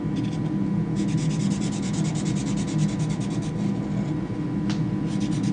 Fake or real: real